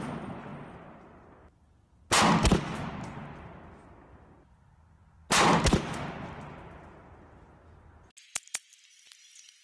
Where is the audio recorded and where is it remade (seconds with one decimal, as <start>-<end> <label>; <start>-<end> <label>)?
0.0-9.6 recorded